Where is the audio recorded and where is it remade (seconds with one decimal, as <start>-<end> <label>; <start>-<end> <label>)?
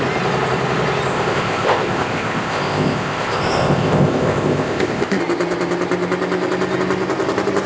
0.0-1.1 recorded; 1.1-5.2 remade; 5.2-7.7 recorded